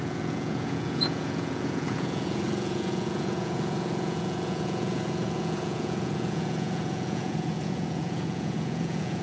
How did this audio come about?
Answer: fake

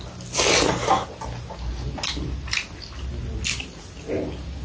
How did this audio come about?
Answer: real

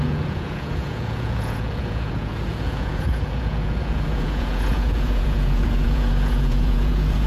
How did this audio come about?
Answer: fake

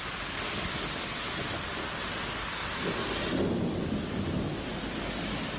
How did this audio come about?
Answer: real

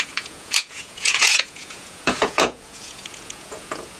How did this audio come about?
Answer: fake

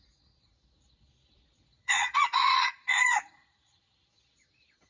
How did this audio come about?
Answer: fake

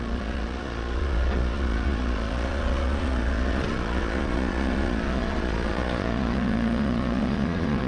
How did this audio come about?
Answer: fake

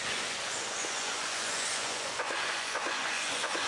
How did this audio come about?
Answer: fake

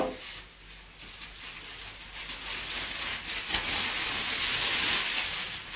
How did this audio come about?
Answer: real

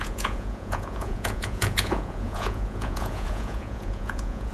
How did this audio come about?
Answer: fake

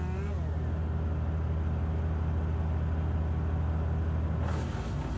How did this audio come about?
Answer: real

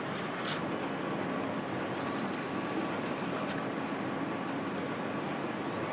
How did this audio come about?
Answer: real